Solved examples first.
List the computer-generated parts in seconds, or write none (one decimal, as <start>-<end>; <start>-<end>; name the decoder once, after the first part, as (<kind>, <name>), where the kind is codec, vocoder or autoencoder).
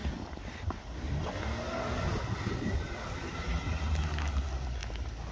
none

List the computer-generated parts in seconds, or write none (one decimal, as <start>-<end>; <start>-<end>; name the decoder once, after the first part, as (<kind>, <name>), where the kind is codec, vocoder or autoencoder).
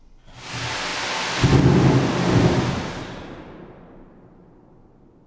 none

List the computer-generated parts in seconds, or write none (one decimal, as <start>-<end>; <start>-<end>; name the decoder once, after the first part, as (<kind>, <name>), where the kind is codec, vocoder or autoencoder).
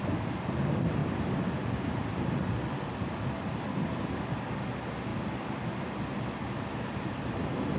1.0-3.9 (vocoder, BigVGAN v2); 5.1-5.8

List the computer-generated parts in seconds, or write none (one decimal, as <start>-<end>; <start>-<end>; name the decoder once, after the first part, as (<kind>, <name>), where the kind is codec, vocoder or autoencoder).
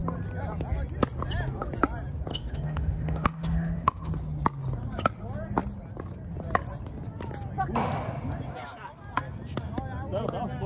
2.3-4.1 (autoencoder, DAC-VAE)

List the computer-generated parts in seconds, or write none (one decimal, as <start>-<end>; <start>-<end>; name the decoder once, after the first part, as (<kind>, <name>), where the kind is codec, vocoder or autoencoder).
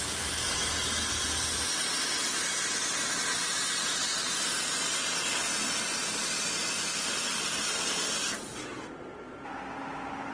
none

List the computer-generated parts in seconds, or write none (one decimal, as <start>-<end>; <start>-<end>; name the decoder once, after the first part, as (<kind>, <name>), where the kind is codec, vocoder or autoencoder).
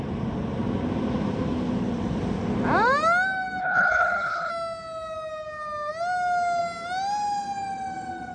3.6-4.5 (codec, HILCodec)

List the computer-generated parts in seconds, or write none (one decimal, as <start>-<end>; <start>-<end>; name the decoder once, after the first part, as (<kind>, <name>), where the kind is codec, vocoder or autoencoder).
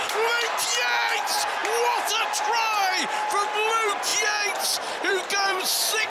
4.1-6.1 (vocoder, BigVGAN v2)